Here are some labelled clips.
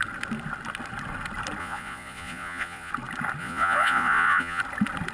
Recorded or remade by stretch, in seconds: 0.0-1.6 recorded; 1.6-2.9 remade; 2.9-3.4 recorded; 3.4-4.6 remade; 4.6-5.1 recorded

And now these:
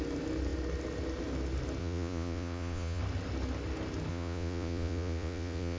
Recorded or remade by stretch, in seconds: 0.0-1.8 recorded; 1.8-3.0 remade; 3.0-4.1 recorded; 4.1-5.8 remade